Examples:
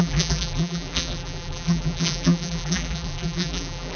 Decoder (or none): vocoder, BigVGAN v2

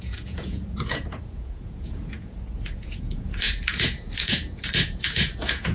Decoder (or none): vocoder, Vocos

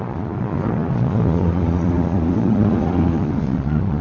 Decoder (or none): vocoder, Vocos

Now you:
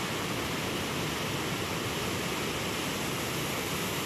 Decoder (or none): none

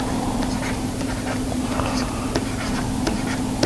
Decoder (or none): vocoder, BigVGAN v2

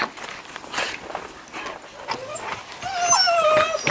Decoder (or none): none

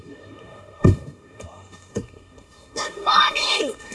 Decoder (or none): codec, SNAC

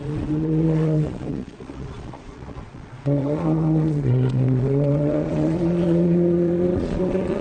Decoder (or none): vocoder, Vocos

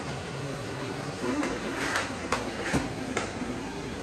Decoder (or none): codec, SNAC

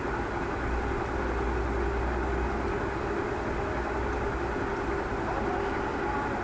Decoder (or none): none